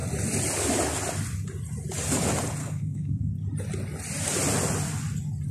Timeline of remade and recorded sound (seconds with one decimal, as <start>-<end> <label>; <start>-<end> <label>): 0.0-2.6 recorded; 2.6-3.3 remade; 3.3-5.5 recorded